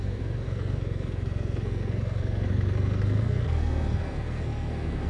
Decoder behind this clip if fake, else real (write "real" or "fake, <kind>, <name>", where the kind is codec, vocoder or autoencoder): fake, codec, SNAC